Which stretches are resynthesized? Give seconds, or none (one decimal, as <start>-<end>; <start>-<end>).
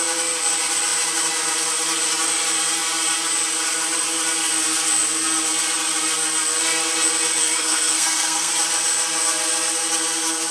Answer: 7.4-8.5